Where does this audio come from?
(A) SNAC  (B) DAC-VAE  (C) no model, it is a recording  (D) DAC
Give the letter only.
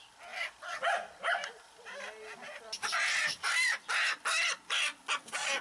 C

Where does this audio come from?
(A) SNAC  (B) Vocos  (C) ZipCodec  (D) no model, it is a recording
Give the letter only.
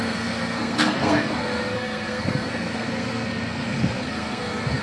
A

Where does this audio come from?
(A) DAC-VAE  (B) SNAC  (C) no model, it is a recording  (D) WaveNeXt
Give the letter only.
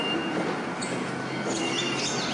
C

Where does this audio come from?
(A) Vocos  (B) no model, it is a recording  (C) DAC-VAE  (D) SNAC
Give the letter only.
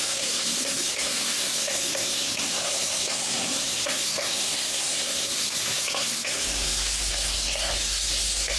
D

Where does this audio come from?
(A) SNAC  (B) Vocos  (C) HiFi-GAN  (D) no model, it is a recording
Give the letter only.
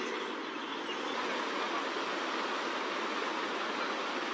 D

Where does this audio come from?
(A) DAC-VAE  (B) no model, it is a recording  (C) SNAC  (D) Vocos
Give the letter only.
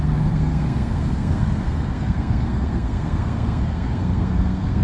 C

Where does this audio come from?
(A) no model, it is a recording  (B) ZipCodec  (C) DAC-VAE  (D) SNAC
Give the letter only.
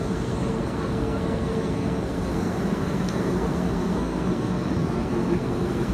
D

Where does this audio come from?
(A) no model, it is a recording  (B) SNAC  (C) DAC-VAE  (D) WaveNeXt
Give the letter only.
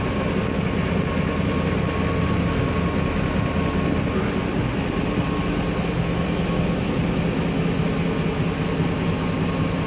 A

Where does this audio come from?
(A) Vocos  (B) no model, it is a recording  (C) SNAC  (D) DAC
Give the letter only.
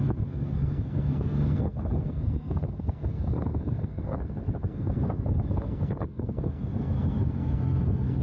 C